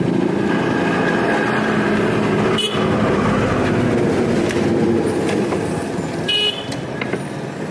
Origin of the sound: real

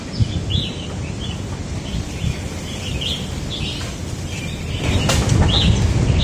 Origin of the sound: real